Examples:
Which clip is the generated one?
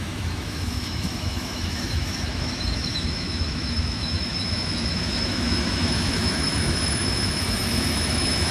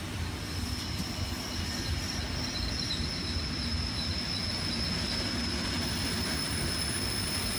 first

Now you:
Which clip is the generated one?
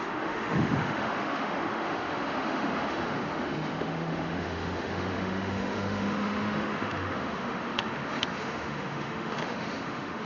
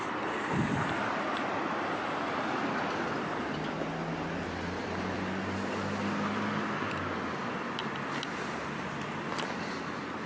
first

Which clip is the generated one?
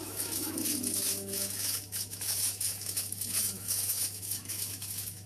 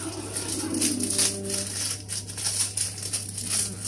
first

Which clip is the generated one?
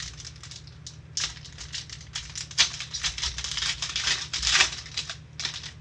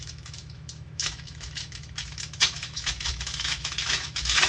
second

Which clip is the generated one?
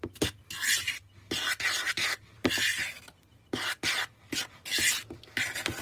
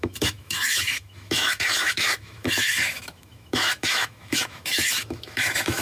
second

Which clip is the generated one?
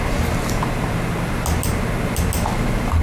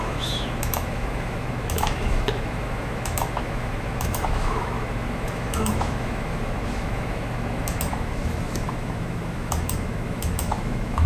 second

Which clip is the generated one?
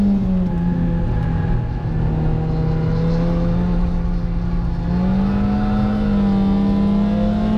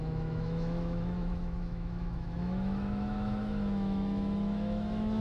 second